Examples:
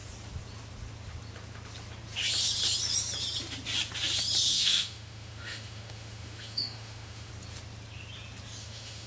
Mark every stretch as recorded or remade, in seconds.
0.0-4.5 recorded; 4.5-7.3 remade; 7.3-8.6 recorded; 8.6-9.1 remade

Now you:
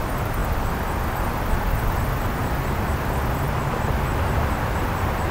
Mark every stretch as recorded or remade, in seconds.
0.0-5.3 recorded

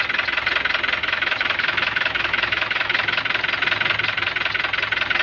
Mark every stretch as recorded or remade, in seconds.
0.0-1.0 recorded; 1.0-3.2 remade; 3.2-5.2 recorded

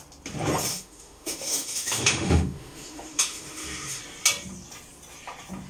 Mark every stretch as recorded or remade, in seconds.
0.0-0.7 recorded; 0.7-4.0 remade; 4.0-5.7 recorded

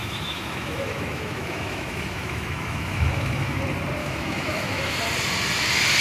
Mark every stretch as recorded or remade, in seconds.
0.0-3.6 remade; 3.6-4.0 recorded; 4.0-4.9 remade; 4.9-6.0 recorded